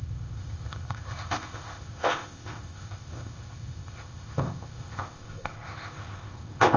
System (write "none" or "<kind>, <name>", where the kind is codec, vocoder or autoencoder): codec, ZipCodec